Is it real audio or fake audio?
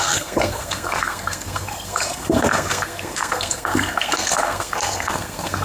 fake